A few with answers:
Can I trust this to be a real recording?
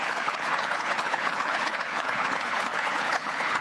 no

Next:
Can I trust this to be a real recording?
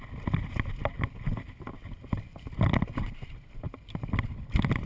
yes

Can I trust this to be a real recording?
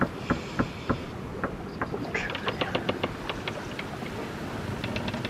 yes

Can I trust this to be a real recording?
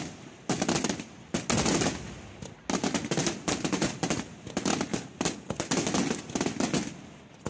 yes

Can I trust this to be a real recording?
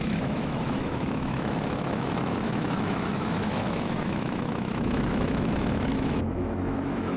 no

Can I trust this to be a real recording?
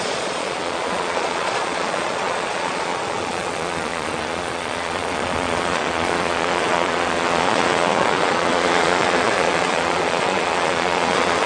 no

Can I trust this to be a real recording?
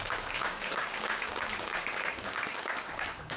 no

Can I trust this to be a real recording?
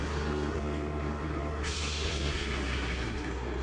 no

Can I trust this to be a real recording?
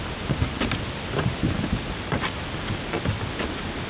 yes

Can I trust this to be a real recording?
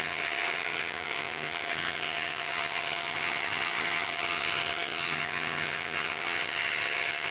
no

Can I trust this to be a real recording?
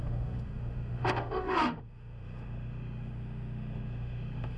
no